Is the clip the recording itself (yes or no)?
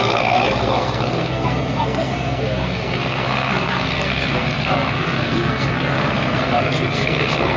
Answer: no